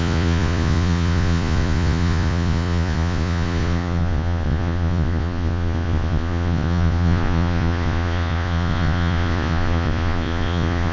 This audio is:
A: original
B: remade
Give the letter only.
B